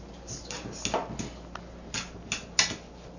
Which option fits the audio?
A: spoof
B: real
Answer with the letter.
B